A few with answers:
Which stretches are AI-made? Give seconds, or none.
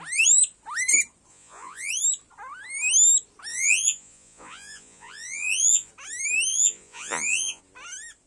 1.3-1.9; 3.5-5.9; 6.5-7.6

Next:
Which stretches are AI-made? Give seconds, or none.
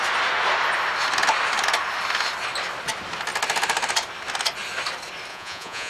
5.3-5.9